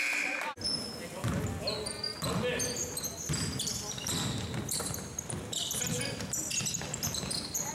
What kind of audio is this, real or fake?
real